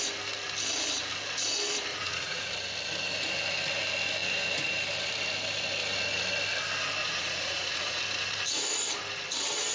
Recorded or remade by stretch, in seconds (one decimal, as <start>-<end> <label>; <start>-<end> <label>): 0.0-1.9 recorded; 1.9-2.5 remade; 2.5-7.0 recorded; 7.0-8.0 remade; 8.0-9.7 recorded